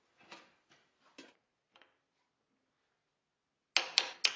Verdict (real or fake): real